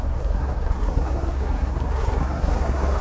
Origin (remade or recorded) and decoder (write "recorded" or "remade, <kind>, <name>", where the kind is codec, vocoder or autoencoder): remade, codec, SNAC